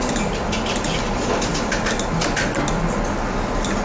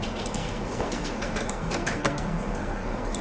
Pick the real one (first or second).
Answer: first